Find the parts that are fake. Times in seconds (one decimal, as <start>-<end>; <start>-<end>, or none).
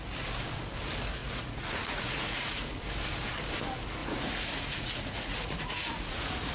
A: 1.2-2.6; 4.0-6.5